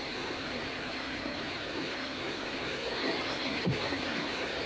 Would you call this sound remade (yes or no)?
yes